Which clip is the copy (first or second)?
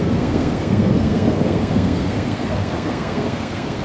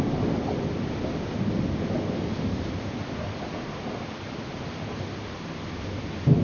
first